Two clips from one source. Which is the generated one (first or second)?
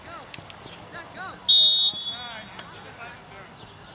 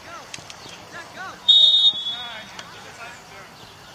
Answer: second